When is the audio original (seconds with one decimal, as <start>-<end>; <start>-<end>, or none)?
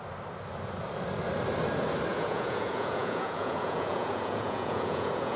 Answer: 0.0-2.1